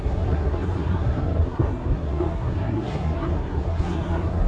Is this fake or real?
fake